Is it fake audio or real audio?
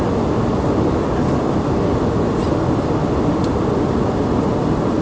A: real